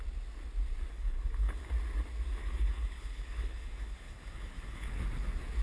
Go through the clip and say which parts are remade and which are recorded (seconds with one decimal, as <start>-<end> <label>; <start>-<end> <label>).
0.0-0.9 recorded; 0.9-1.7 remade; 1.7-2.4 recorded; 2.4-5.0 remade; 5.0-5.6 recorded